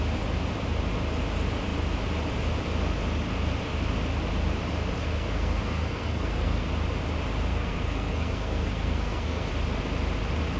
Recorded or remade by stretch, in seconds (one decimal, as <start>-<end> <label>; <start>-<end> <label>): 0.0-5.0 recorded; 5.0-6.7 remade; 6.7-7.5 recorded; 7.5-9.5 remade; 9.5-10.6 recorded